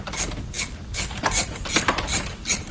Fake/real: real